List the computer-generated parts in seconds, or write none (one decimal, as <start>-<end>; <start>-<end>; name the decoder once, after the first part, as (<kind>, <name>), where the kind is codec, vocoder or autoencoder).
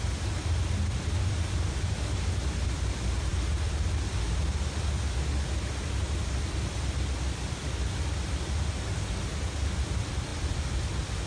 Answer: none